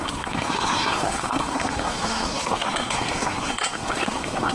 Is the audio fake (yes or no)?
yes